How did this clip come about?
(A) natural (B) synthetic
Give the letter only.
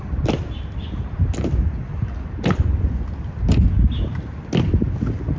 A